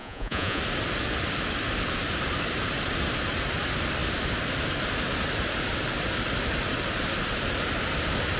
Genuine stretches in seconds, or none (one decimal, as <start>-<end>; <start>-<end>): 0.6-8.4